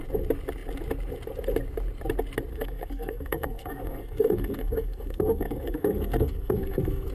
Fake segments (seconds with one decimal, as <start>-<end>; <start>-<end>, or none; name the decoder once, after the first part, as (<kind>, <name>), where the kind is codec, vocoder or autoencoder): 2.5-7.1 (codec, SNAC)